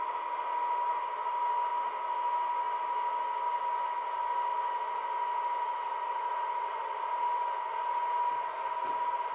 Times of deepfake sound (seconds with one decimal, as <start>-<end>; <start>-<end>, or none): none